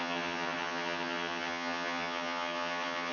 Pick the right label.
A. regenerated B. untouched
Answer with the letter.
A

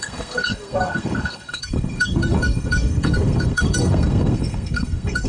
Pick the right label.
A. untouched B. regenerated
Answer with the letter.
B